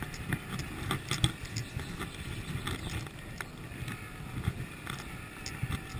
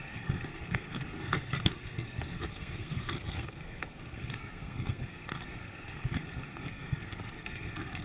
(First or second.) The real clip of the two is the first